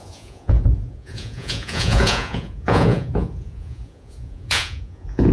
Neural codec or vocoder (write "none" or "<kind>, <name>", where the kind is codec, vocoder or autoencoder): vocoder, Vocos